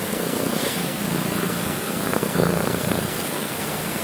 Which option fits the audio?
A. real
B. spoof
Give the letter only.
B